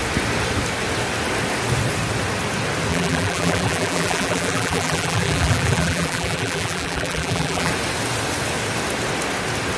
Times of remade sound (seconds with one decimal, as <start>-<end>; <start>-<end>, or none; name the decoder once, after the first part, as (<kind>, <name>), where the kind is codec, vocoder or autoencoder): 2.9-7.7 (vocoder, BigVGAN v2)